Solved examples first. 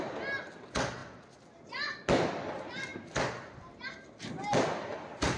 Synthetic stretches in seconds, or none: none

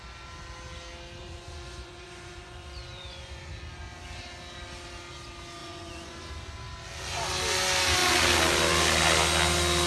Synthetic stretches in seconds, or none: 1.2-3.5 (vocoder, Vocos); 5.6-6.3

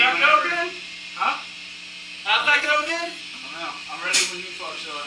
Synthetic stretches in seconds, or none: 2.4-3.2 (codec, SNAC)

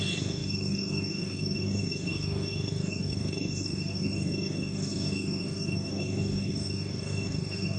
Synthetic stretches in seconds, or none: 0.0-7.8 (codec, DAC)

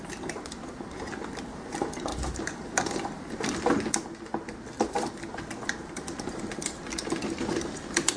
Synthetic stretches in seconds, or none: none